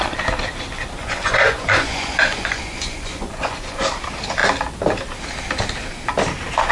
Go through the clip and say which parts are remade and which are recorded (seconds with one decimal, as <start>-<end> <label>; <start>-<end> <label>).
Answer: 0.0-1.0 recorded; 1.0-3.8 remade; 3.8-6.7 recorded